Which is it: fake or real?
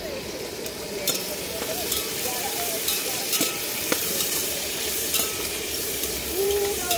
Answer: fake